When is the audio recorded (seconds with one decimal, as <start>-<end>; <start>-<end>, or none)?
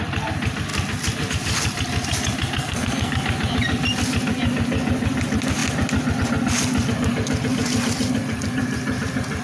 0.0-2.6; 3.2-9.4